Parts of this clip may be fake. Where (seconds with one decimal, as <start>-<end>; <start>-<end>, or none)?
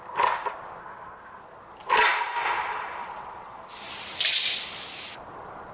0.8-1.4